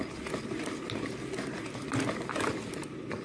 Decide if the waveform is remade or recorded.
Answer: recorded